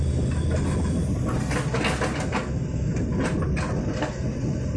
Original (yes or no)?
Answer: yes